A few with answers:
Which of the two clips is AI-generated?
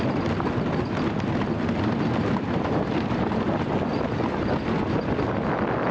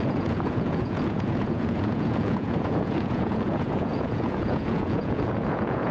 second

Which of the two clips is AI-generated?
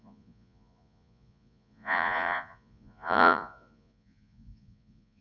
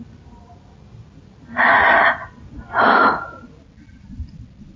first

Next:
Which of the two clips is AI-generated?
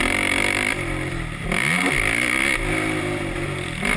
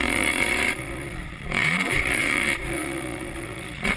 second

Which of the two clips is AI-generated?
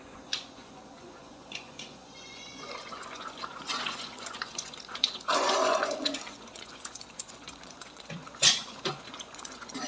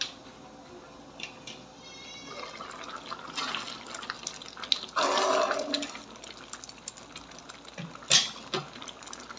first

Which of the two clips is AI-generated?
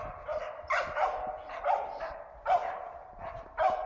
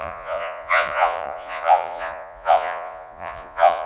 second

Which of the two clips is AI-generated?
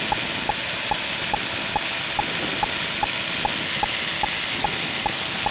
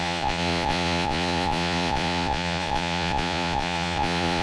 second